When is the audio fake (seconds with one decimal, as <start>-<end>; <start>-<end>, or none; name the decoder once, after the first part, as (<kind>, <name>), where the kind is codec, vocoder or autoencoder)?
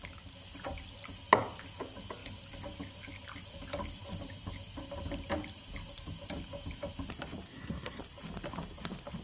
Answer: 7.5-8.0 (codec, SNAC)